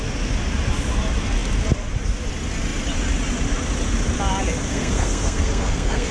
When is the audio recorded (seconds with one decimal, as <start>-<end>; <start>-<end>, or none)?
0.0-4.7